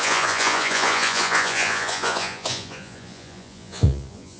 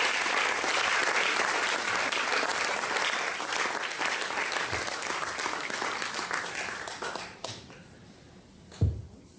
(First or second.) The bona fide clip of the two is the second